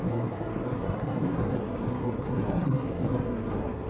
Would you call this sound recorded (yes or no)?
no